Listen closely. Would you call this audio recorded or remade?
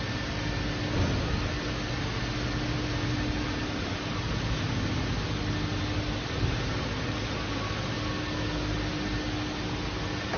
recorded